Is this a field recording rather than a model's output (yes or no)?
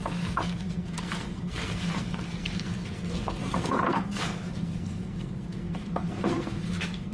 no